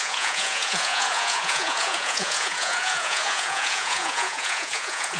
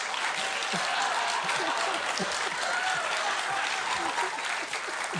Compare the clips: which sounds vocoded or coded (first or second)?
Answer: first